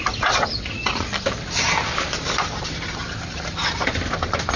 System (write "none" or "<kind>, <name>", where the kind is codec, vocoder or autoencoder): none